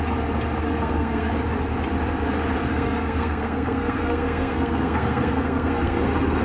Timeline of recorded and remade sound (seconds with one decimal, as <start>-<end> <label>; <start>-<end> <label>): 0.0-0.6 recorded; 0.6-1.3 remade; 1.3-2.7 recorded; 2.7-6.4 remade